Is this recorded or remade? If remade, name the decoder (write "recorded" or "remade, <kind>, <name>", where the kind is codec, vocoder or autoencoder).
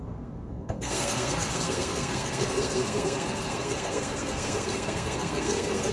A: remade, codec, SNAC